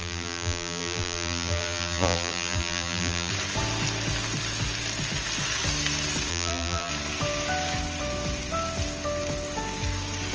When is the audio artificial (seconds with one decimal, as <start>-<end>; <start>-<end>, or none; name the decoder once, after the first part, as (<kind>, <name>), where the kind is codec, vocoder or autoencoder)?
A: 0.0-3.3 (vocoder, BigVGAN v2); 6.3-6.9